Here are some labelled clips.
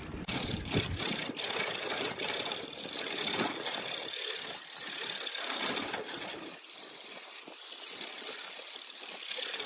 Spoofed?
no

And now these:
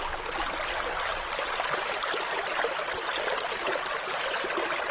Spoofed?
no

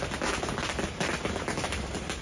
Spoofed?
no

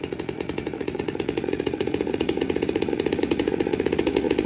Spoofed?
yes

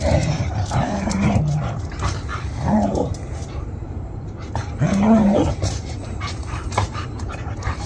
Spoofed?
yes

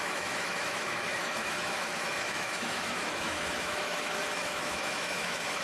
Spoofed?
yes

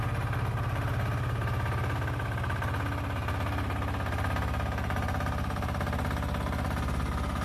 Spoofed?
no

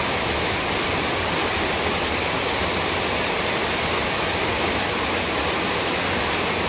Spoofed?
no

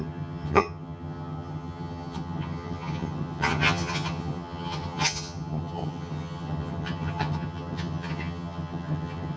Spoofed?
yes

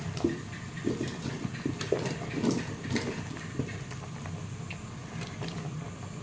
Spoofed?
no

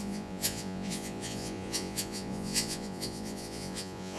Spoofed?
yes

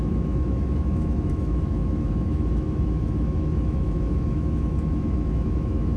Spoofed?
yes